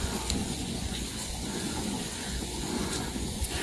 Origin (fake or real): fake